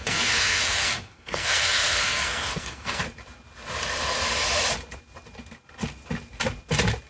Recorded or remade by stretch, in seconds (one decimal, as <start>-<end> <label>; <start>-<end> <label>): 0.0-3.0 remade; 3.0-7.1 recorded